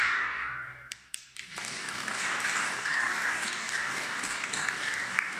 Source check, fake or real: fake